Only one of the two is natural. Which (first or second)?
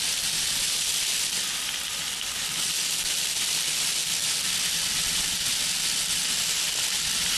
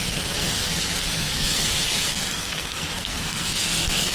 first